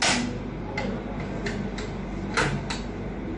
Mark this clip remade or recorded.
recorded